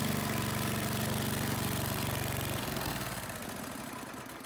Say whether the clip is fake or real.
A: real